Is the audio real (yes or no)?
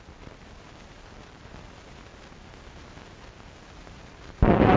yes